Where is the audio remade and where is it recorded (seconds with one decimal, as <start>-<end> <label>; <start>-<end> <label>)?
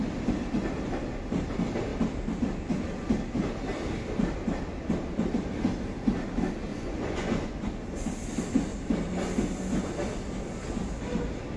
0.0-6.7 recorded; 6.7-7.7 remade; 7.7-11.6 recorded